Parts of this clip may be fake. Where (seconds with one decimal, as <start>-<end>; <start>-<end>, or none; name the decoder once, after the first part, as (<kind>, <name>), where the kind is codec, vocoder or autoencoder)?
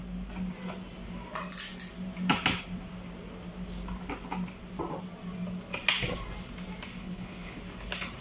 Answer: 7.0-7.6 (codec, HILCodec)